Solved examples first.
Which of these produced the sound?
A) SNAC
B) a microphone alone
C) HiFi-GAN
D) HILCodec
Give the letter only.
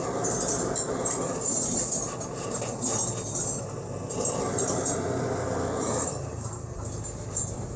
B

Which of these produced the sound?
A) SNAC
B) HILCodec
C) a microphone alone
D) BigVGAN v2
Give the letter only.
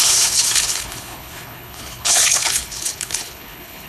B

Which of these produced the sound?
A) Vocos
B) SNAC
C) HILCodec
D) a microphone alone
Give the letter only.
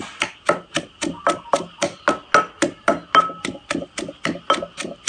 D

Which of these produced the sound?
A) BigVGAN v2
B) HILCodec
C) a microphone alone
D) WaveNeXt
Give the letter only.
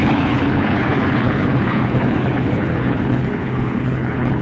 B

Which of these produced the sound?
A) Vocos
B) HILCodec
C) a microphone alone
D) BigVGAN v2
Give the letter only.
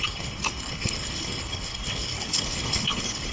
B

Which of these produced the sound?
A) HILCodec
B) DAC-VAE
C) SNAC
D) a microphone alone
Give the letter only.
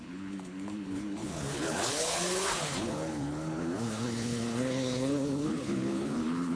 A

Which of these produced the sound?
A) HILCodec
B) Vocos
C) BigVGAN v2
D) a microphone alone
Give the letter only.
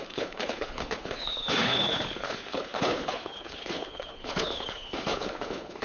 A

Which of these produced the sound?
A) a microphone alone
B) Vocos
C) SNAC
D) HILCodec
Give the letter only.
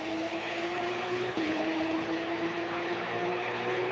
D